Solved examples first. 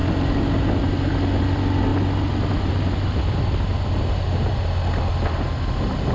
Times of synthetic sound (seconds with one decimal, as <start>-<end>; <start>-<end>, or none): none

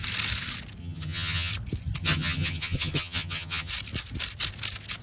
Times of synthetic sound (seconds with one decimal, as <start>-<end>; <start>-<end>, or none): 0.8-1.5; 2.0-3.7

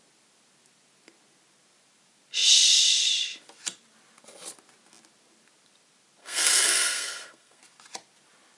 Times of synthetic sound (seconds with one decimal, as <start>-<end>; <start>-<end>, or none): 6.2-7.6